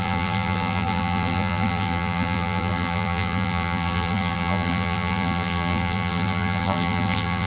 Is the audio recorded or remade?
remade